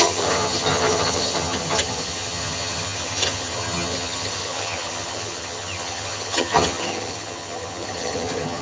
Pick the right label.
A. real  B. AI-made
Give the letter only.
B